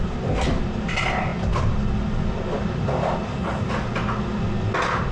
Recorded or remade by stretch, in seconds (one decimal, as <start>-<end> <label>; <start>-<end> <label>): 0.0-5.1 recorded